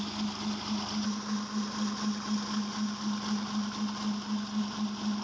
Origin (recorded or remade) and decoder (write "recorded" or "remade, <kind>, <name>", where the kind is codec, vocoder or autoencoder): recorded